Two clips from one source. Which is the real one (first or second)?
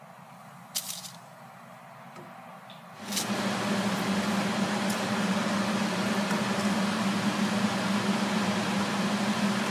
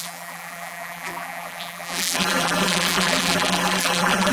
first